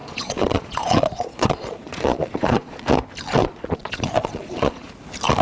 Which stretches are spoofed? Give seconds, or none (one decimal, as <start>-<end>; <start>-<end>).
0.0-2.8; 3.4-4.9